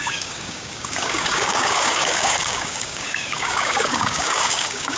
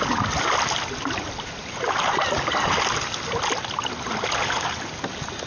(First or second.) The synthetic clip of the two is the first